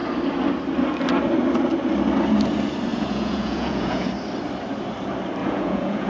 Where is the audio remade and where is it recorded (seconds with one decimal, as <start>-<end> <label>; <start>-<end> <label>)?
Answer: 0.0-2.9 recorded; 2.9-4.1 remade; 4.1-5.4 recorded; 5.4-6.1 remade